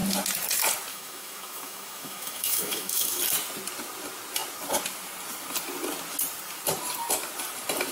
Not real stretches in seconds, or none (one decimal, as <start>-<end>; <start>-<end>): 0.9-3.2